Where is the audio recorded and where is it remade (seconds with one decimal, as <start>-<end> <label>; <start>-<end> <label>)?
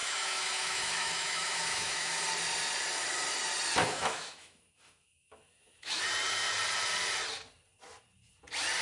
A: 0.0-2.2 remade; 2.2-3.8 recorded; 3.8-6.0 remade; 6.0-8.8 recorded